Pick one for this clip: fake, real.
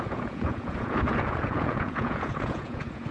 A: fake